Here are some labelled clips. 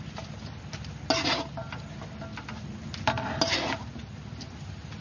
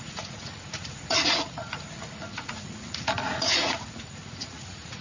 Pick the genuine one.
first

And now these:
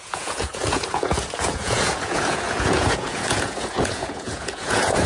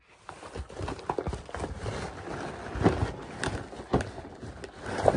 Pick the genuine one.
second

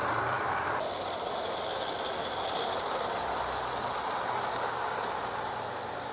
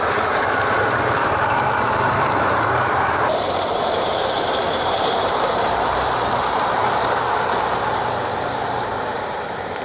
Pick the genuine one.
first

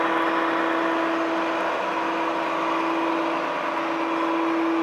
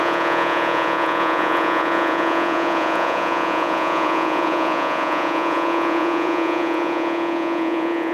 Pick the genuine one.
first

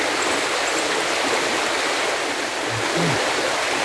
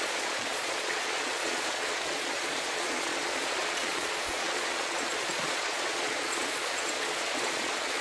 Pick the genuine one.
first